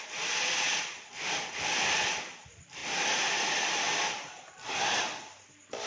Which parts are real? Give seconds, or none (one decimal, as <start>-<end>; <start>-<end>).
2.8-3.6